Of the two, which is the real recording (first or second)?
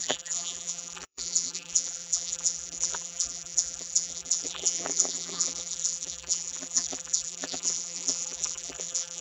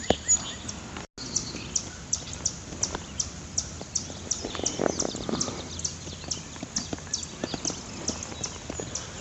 second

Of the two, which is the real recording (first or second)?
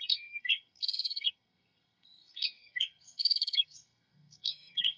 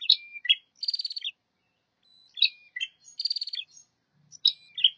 second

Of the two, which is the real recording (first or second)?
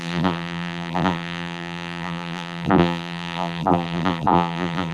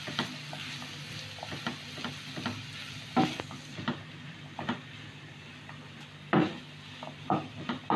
second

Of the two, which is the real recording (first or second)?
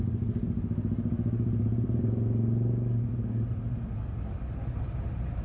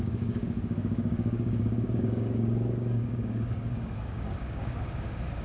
first